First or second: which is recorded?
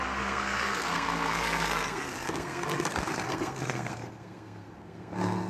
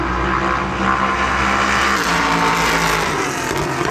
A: second